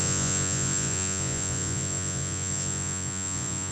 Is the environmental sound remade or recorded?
remade